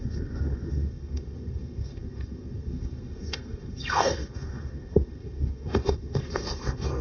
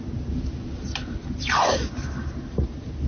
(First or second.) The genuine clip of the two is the second